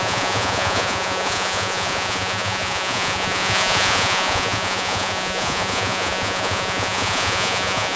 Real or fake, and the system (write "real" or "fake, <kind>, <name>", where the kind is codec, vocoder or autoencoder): fake, vocoder, Vocos